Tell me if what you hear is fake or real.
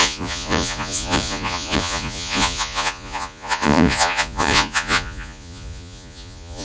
fake